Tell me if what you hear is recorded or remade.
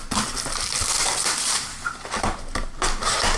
recorded